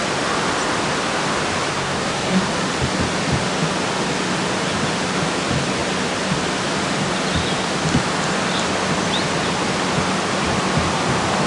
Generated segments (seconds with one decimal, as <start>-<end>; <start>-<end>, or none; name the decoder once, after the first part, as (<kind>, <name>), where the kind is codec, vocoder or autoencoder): 1.7-2.5 (codec, SNAC)